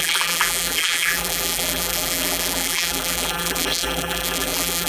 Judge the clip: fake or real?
fake